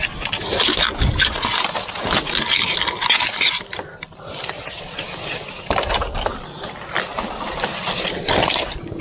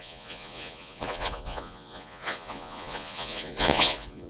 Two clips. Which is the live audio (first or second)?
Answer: first